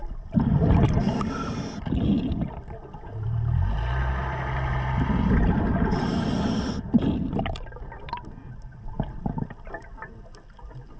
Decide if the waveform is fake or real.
real